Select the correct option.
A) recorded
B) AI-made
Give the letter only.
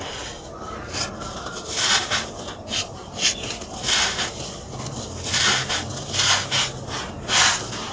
A